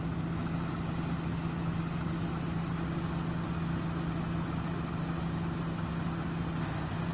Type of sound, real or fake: real